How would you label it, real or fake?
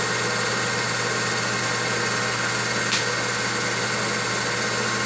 real